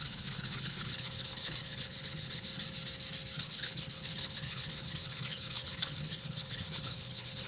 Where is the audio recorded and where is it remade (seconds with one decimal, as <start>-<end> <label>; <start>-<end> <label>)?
0.0-2.5 remade; 2.5-3.4 recorded; 3.4-7.5 remade